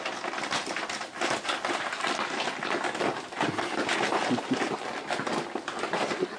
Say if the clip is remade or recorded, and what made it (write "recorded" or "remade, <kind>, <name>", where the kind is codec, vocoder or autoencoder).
recorded